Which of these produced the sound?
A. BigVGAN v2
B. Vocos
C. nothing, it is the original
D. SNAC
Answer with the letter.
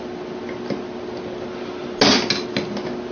C